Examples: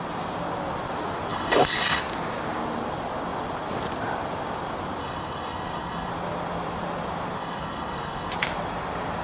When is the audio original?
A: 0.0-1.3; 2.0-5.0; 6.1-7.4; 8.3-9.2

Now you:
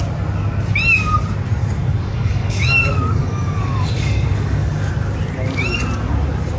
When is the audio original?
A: 0.0-1.6; 4.9-6.6

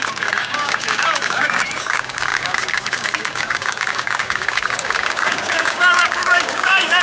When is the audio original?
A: none

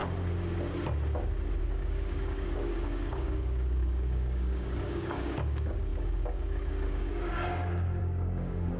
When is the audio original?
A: 0.0-1.6

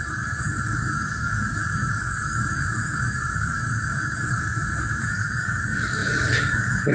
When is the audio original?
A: none

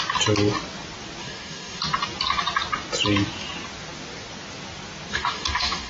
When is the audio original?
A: 0.0-1.2; 1.8-5.1

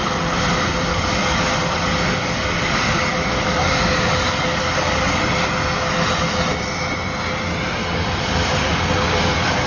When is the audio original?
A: 0.0-0.9; 5.2-7.8

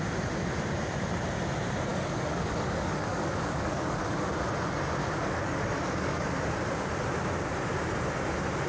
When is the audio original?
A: 0.0-1.9; 4.3-5.0; 6.3-8.7